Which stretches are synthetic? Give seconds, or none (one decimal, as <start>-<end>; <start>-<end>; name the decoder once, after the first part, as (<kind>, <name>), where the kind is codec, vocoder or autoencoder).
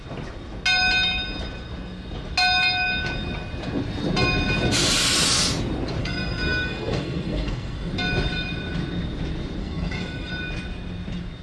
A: 6.0-7.9 (codec, SNAC); 9.6-10.3